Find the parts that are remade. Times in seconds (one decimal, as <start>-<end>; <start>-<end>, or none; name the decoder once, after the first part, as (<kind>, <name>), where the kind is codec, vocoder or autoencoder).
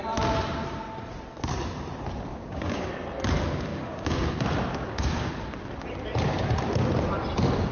2.3-2.9 (codec, DAC); 3.7-4.3; 4.7-5.3